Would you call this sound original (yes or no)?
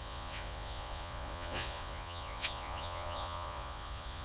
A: no